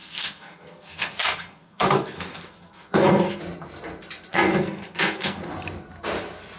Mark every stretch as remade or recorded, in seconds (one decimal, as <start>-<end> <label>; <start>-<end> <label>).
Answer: 0.0-3.4 remade; 3.4-4.3 recorded; 4.3-5.4 remade; 5.4-6.6 recorded